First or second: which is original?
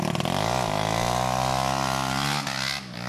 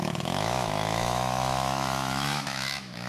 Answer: first